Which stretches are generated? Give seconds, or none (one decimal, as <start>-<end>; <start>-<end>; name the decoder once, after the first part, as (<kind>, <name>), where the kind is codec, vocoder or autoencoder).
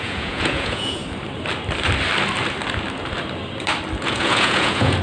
0.0-1.0 (vocoder, Vocos); 4.0-5.0